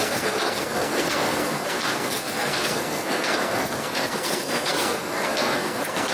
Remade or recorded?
remade